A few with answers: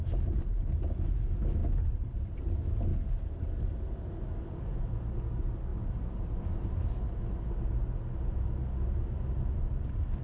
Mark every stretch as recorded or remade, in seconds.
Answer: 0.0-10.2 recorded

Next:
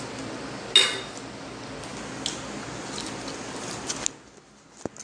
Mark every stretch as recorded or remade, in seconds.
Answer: 0.0-5.0 recorded